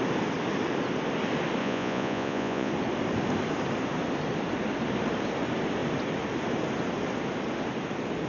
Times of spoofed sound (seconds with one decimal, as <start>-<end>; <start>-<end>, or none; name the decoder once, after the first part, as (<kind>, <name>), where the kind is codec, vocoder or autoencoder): 1.6-2.7 (vocoder, Vocos)